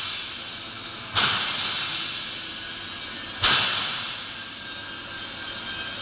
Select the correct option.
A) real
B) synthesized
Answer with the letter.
A